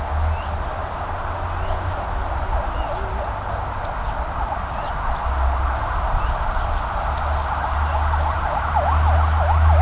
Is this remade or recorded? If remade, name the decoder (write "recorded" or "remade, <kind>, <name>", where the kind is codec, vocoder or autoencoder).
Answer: recorded